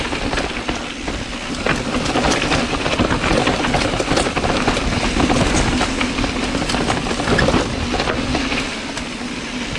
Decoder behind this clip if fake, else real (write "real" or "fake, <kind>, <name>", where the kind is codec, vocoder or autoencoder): real